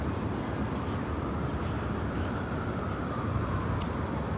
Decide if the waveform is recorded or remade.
recorded